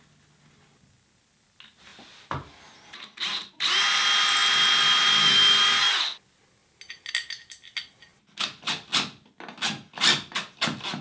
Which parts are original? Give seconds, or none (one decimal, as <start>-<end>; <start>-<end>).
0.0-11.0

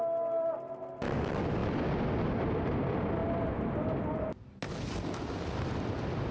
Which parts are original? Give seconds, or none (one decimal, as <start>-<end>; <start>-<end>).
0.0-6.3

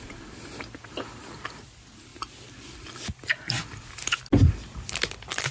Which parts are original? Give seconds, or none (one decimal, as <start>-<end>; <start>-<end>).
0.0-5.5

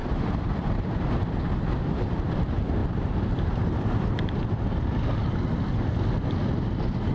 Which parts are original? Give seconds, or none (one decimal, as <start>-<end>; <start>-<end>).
1.1-7.1

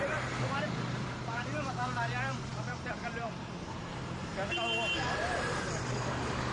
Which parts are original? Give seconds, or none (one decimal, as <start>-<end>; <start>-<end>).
4.3-5.8

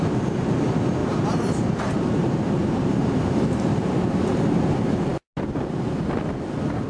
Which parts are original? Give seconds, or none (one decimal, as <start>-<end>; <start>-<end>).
0.0-1.0; 4.6-6.9

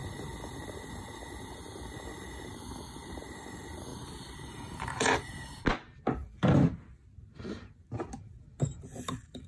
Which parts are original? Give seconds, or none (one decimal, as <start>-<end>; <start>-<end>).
0.0-3.9; 5.6-9.5